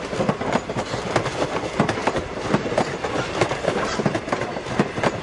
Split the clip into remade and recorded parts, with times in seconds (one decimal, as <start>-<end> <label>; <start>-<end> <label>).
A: 0.0-2.0 recorded; 2.0-5.2 remade